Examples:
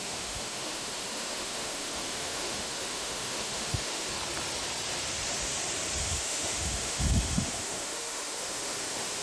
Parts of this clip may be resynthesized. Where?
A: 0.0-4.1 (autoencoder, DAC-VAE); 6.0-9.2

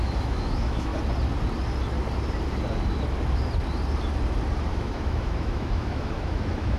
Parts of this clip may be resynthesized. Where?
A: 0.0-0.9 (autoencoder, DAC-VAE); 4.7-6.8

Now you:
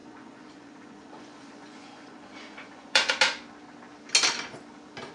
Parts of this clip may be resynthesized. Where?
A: 0.0-3.1 (vocoder, Vocos)